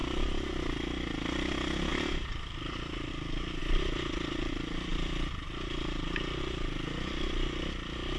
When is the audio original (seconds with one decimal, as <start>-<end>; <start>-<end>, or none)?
0.5-1.9; 3.1-3.6; 4.5-4.9; 6.4-8.2